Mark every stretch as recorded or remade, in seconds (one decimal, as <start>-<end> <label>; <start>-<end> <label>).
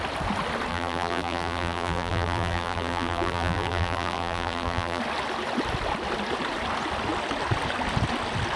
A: 0.0-0.7 recorded; 0.7-5.0 remade; 5.0-8.6 recorded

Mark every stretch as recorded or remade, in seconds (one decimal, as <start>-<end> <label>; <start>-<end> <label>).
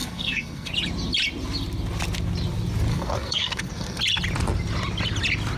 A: 0.0-0.7 remade; 0.7-2.9 recorded; 2.9-4.0 remade; 4.0-5.6 recorded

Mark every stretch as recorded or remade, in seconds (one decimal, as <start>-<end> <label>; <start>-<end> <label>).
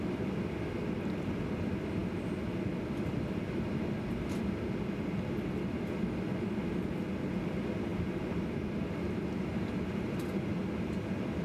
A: 0.0-9.5 recorded; 9.5-10.6 remade; 10.6-11.4 recorded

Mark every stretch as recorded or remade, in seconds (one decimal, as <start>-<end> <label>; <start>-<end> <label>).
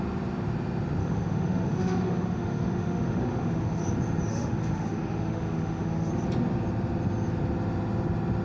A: 0.0-1.0 recorded; 1.0-3.8 remade; 3.8-4.3 recorded; 4.3-6.1 remade; 6.1-8.4 recorded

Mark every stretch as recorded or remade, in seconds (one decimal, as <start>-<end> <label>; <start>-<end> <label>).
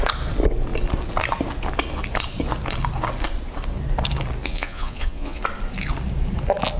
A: 0.0-4.4 recorded; 4.4-5.4 remade; 5.4-6.8 recorded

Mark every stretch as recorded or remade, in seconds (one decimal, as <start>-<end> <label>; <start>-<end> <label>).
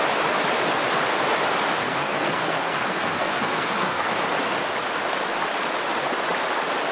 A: 0.0-1.8 recorded; 1.8-4.1 remade; 4.1-6.9 recorded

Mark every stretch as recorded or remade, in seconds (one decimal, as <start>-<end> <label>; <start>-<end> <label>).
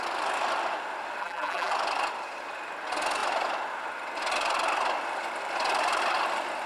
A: 0.0-1.2 recorded; 1.2-1.7 remade; 1.7-6.7 recorded